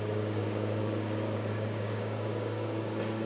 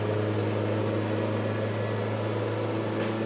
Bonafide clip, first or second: second